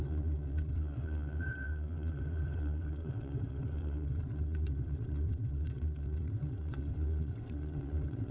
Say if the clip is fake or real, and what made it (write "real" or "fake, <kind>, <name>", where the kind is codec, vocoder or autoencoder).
fake, vocoder, WaveNeXt